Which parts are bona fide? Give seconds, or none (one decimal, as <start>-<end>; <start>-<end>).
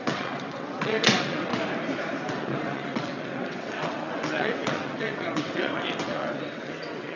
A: 1.5-2.3